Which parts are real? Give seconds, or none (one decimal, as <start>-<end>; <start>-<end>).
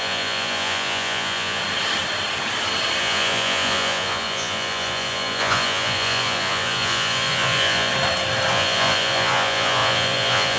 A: 1.6-3.0; 7.9-8.5